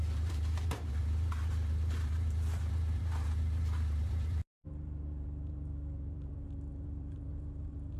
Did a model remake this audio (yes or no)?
yes